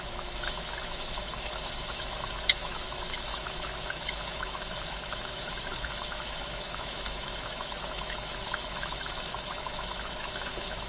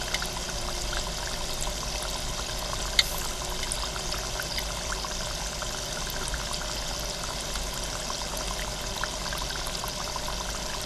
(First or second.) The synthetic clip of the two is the first